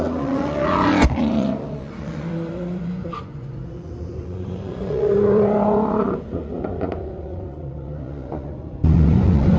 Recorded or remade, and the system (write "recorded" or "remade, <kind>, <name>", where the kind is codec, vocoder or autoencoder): remade, vocoder, Vocos